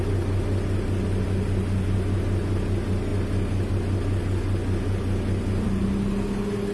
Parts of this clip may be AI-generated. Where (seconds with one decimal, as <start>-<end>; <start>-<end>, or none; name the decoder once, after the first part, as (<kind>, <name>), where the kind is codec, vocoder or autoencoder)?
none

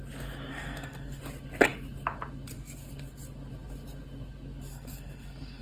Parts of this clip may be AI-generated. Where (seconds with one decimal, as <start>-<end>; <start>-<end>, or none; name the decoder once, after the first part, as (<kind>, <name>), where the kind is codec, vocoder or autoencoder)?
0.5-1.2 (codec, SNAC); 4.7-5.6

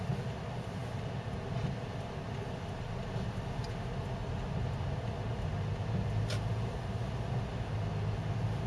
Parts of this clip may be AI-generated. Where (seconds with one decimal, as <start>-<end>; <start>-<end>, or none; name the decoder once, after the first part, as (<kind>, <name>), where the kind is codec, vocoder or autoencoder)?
none